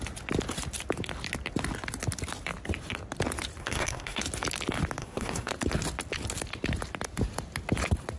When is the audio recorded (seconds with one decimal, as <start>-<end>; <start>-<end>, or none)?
0.0-3.6; 4.2-5.0; 5.5-8.2